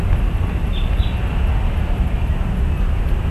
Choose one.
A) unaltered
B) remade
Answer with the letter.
A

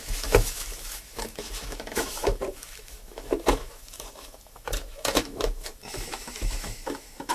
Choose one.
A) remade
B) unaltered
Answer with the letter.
A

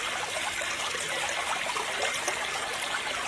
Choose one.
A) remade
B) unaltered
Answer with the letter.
B